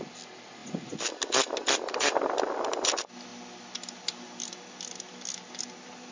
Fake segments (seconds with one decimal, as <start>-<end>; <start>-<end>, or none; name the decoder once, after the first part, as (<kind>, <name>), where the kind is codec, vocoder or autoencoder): none